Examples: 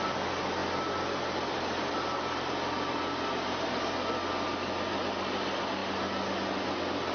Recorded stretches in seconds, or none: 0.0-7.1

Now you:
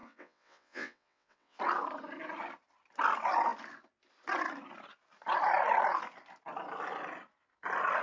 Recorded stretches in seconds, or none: 1.6-8.0

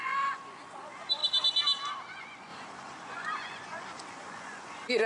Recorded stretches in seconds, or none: 1.2-2.1

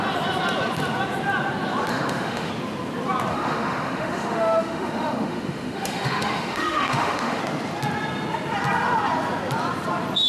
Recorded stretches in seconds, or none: 0.0-1.9; 2.5-3.3; 7.4-10.3

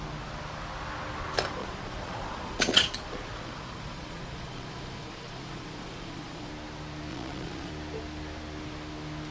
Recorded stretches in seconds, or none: 0.0-1.6; 6.5-7.1; 7.7-9.3

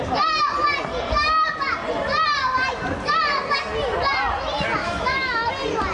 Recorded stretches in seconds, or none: 0.0-4.8; 5.5-5.9

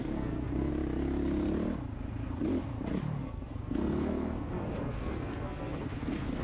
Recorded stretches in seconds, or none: 0.7-3.2